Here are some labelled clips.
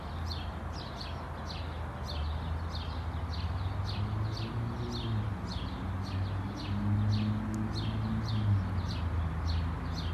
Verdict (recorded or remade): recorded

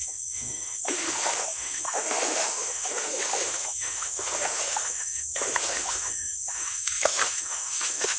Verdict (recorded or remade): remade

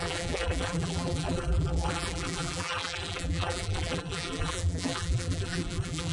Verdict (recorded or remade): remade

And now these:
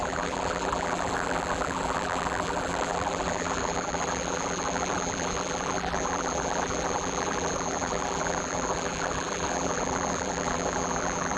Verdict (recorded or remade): remade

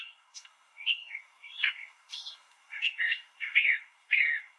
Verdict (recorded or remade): remade